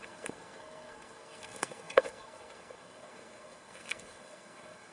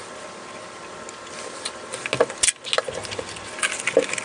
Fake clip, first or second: first